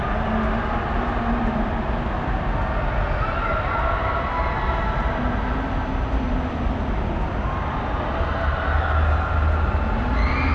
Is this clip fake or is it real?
real